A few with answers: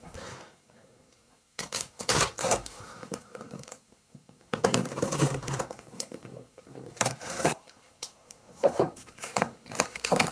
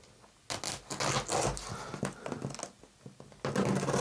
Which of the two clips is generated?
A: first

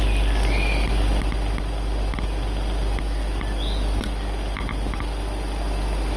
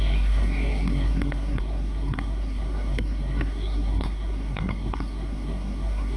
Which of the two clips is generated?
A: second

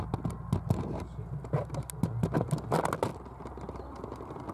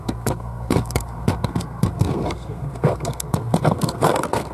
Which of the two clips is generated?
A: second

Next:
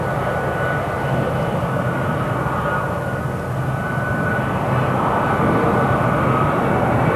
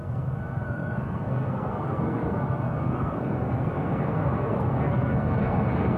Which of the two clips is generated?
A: second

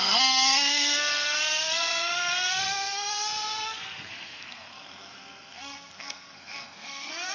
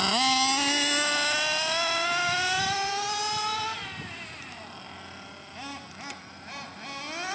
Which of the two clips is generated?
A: first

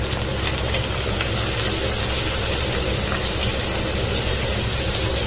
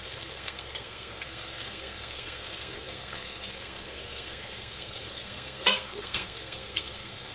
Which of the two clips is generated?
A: second